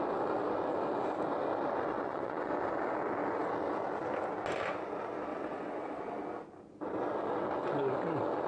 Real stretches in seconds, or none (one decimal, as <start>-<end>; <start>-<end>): 0.0-1.9; 2.5-5.3; 6.0-8.5